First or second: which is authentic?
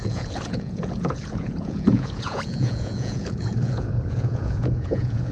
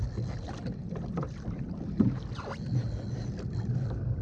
second